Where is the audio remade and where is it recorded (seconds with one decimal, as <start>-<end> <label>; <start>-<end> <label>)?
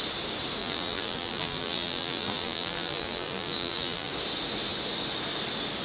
0.0-0.6 recorded; 0.6-4.1 remade; 4.1-5.8 recorded